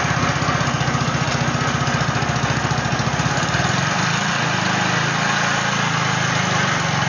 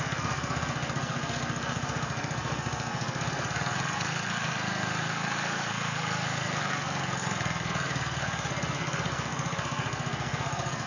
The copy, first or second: second